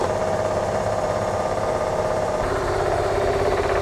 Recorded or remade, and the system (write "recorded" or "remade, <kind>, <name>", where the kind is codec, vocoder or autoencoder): remade, vocoder, BigVGAN v2